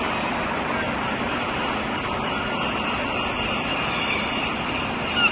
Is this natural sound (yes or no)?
yes